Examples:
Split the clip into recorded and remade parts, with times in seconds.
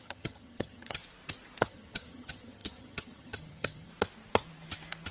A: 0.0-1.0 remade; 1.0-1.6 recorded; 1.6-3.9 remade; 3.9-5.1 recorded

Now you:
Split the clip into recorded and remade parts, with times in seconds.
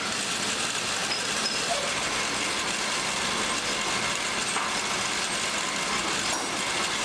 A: 0.0-7.0 recorded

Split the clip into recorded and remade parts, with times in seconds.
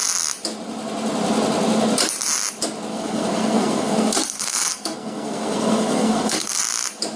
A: 0.0-2.9 recorded; 2.9-6.6 remade; 6.6-7.2 recorded